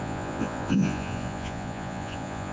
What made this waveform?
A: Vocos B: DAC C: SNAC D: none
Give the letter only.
A